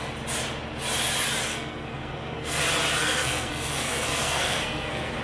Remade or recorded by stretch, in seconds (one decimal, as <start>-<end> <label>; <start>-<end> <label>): 0.0-1.5 recorded; 1.5-2.6 remade; 2.6-3.0 recorded; 3.0-5.2 remade

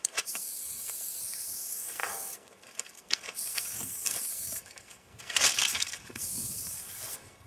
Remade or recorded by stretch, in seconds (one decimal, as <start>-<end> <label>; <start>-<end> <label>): 0.0-7.5 remade

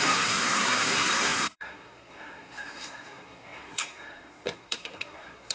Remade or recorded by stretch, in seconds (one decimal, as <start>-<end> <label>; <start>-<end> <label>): 0.0-5.5 remade